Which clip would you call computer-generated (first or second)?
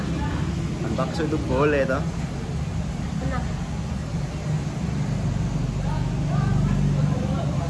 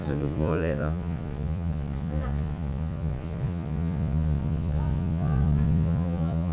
second